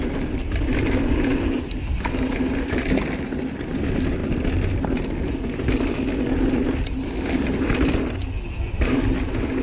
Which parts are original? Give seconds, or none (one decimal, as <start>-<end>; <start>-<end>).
0.0-9.6